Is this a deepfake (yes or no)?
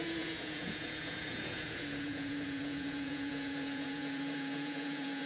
yes